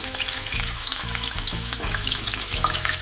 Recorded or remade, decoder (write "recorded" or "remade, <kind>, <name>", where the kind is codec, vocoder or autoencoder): remade, autoencoder, DAC-VAE